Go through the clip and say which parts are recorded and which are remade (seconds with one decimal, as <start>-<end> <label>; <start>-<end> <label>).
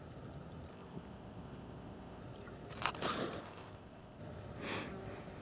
0.0-0.7 recorded; 0.7-2.2 remade; 2.2-3.4 recorded; 3.4-4.2 remade; 4.2-5.4 recorded